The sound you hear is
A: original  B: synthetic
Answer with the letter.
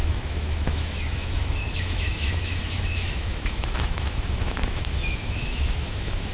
B